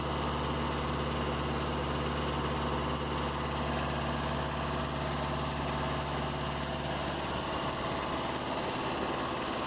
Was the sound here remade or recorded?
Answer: recorded